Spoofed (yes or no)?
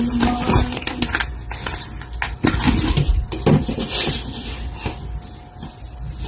no